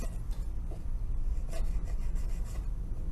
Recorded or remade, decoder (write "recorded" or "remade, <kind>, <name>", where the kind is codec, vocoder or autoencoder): recorded